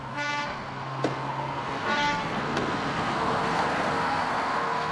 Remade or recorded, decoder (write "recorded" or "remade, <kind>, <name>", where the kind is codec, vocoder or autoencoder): remade, codec, SNAC